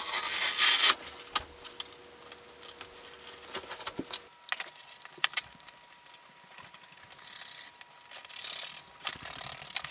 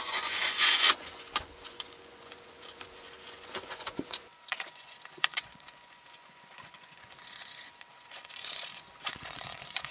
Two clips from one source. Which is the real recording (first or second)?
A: first